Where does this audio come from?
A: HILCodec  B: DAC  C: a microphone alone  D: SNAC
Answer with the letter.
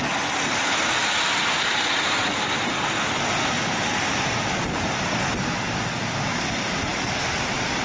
C